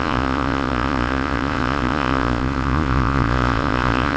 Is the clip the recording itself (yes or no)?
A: no